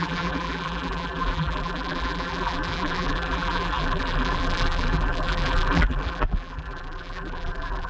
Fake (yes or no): yes